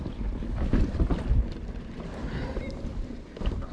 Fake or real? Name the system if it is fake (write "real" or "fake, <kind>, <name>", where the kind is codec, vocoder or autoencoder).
fake, vocoder, BigVGAN v2